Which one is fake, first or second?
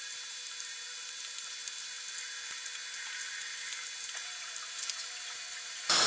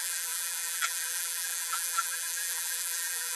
second